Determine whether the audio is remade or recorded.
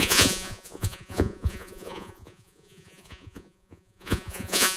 remade